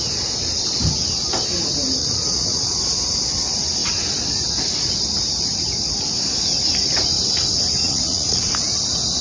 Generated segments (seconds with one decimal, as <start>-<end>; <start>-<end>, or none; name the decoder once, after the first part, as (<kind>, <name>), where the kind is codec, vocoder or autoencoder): 2.0-2.8 (vocoder, Vocos); 7.8-8.5